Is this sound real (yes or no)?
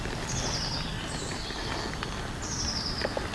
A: yes